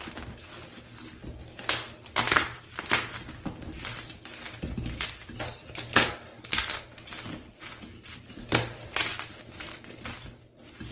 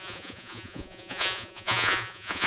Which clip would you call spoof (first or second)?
second